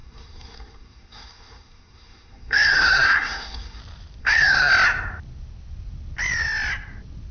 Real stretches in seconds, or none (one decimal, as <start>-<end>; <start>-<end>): 3.8-4.2; 4.7-7.3

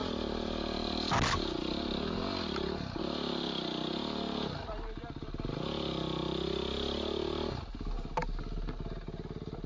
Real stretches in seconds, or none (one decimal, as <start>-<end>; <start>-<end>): 0.0-9.7

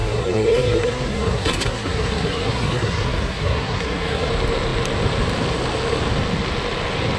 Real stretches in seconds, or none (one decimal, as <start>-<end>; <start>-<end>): 4.3-7.2

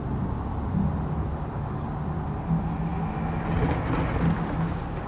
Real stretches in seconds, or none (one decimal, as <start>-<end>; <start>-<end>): 0.0-5.1

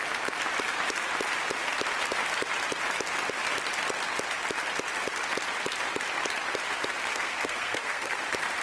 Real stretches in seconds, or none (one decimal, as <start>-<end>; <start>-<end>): 0.0-7.1; 8.2-8.6